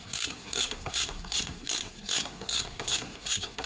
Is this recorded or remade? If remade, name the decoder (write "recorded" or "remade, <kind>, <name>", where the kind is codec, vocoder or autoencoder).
remade, codec, SNAC